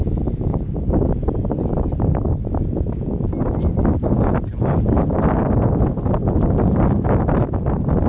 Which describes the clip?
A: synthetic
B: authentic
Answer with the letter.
B